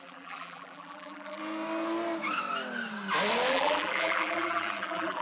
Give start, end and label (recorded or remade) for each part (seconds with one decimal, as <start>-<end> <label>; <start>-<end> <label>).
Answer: 0.0-1.4 remade; 1.4-3.5 recorded; 3.5-5.2 remade